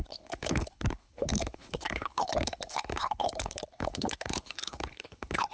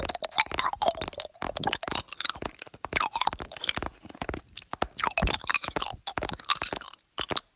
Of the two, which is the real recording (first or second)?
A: second